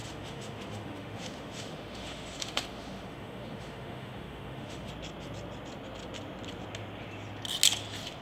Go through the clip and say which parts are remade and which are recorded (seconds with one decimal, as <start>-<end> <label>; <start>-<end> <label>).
0.0-4.9 remade; 4.9-8.2 recorded

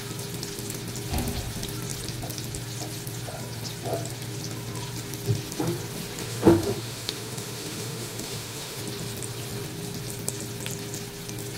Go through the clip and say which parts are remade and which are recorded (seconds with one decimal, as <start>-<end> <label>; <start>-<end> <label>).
0.0-6.2 recorded; 6.2-8.8 remade; 8.8-11.6 recorded